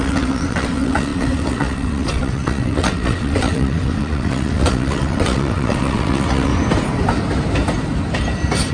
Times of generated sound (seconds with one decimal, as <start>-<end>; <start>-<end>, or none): 0.0-6.5